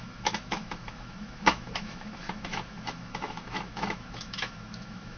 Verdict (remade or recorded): remade